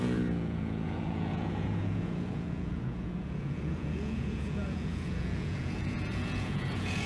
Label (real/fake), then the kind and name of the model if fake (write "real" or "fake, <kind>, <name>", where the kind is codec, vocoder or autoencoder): fake, vocoder, Vocos